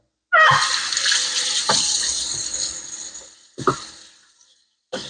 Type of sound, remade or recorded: recorded